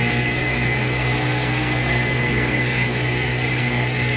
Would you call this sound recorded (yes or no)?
no